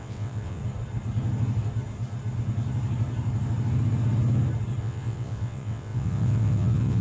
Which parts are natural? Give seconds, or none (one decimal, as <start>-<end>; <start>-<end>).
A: 0.6-4.8